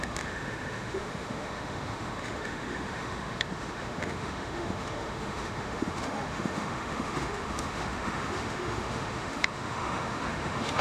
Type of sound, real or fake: fake